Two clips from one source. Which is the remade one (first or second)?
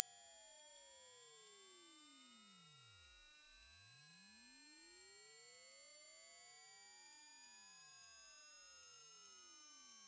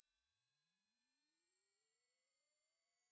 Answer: second